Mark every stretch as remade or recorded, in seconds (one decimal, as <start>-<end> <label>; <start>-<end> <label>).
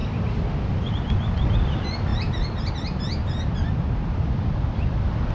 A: 0.0-0.9 remade; 0.9-2.1 recorded; 2.1-2.7 remade; 2.7-5.3 recorded